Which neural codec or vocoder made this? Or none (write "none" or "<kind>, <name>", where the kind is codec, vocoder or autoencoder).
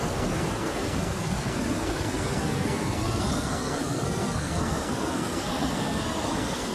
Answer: codec, SNAC